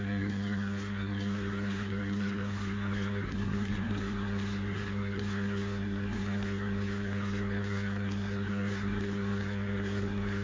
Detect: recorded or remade remade